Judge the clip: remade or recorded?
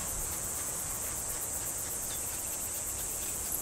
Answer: recorded